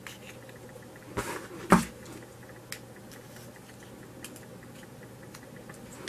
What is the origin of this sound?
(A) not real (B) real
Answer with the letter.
B